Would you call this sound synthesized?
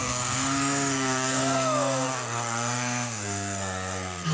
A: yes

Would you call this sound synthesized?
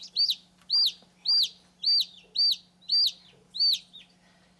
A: no